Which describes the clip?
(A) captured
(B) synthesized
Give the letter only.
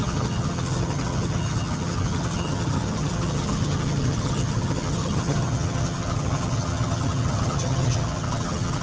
B